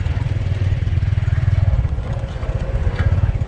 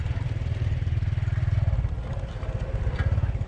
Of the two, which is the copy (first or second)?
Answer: first